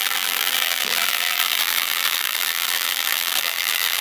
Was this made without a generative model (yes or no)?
no